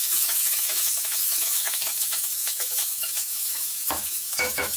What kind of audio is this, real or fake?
fake